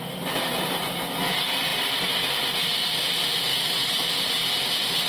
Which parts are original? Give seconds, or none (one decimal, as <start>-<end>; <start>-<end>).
0.0-3.5; 4.1-5.1